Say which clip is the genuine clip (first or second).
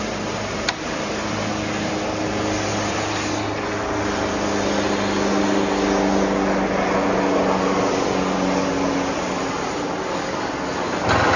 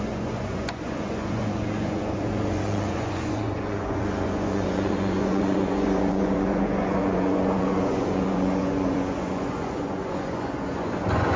first